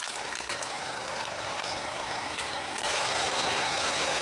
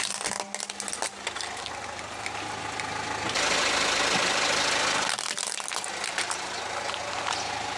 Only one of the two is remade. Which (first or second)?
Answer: first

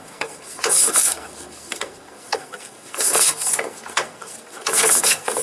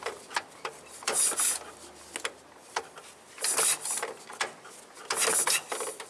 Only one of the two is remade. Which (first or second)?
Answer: first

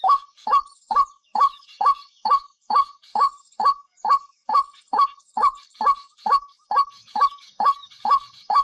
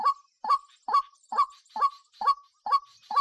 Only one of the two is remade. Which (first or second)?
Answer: first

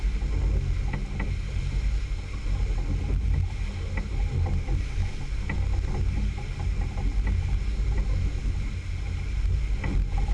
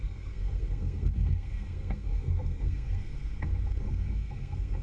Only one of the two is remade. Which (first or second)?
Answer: second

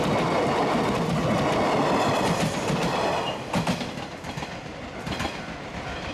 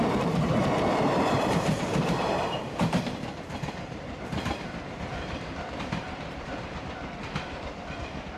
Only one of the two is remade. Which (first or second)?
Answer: second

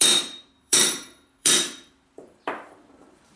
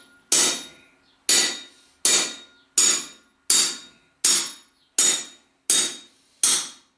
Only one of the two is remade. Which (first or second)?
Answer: first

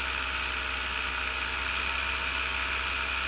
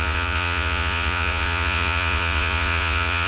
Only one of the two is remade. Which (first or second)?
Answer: second